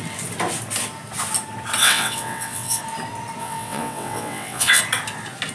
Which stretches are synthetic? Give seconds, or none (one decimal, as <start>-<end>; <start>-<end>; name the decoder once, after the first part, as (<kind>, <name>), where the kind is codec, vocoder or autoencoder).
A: 1.8-2.8 (vocoder, WaveNeXt); 3.4-4.8

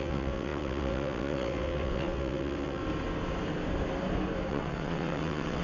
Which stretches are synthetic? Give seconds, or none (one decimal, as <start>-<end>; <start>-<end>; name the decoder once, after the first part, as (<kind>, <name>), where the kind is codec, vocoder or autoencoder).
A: 0.0-2.8 (vocoder, WaveNeXt); 4.5-5.6

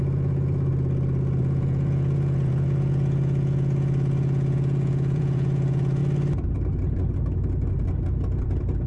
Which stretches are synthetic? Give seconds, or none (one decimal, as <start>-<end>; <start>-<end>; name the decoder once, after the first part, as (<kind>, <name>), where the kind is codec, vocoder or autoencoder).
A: 0.0-0.7 (vocoder, Vocos); 1.4-6.0

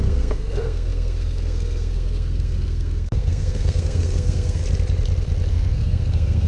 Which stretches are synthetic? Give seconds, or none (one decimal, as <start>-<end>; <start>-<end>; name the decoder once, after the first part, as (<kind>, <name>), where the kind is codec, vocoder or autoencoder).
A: 0.0-4.6 (codec, SNAC); 5.5-6.5

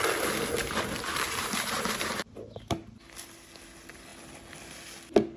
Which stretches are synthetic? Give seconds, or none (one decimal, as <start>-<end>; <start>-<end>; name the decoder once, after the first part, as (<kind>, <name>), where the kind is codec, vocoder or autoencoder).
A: 0.6-2.3 (vocoder, BigVGAN v2)